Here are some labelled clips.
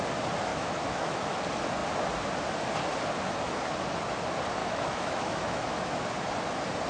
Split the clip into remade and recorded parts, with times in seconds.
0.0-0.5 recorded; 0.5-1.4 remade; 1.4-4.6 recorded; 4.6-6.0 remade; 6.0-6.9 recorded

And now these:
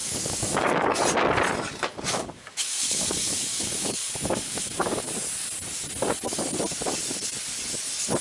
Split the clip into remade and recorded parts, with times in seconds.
0.0-1.0 remade; 1.0-1.9 recorded; 1.9-5.1 remade; 5.1-8.2 recorded

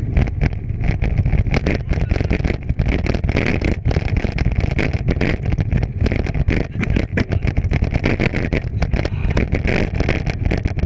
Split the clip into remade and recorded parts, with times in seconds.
0.0-10.9 recorded

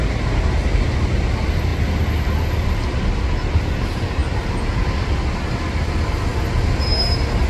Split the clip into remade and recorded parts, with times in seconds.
0.0-7.5 recorded

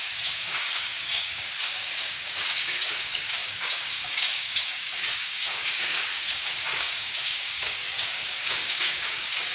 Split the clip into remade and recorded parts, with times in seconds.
0.0-9.5 remade

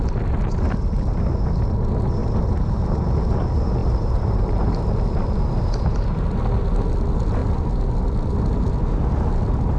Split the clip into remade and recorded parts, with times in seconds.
0.0-2.2 recorded; 2.2-2.8 remade; 2.8-3.8 recorded; 3.8-6.0 remade; 6.0-9.8 recorded

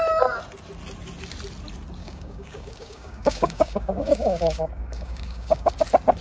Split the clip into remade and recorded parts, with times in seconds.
0.0-2.0 recorded; 2.0-5.7 remade; 5.7-6.2 recorded

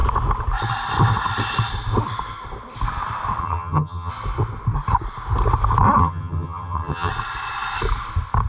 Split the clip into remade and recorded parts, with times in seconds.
0.0-3.4 recorded; 3.4-4.1 remade; 4.1-6.0 recorded; 6.0-7.1 remade; 7.1-8.5 recorded